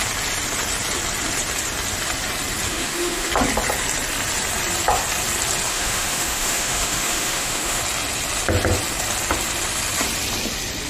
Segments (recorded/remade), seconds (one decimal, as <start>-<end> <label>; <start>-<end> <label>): 0.0-2.7 recorded; 2.7-3.3 remade; 3.3-5.7 recorded; 5.7-7.8 remade; 7.8-10.9 recorded